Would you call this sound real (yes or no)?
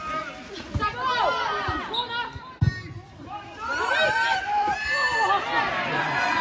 yes